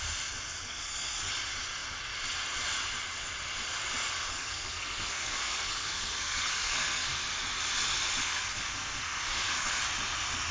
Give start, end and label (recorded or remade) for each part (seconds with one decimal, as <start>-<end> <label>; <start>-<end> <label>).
0.0-0.7 recorded; 0.7-1.3 remade; 1.3-4.3 recorded; 4.3-7.2 remade; 7.2-8.2 recorded; 8.2-9.8 remade; 9.8-10.5 recorded